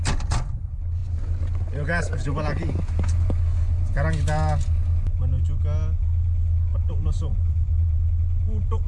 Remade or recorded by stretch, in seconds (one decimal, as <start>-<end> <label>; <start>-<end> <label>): 0.0-6.7 recorded; 6.7-8.0 remade; 8.0-8.9 recorded